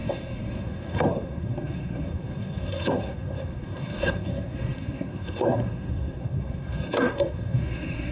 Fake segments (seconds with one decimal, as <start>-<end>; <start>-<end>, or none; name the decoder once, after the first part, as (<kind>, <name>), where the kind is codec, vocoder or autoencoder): 0.0-8.1 (codec, SNAC)